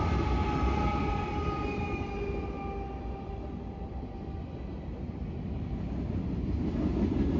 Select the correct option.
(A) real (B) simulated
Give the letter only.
A